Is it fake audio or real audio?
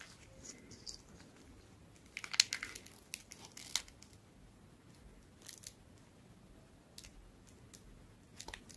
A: real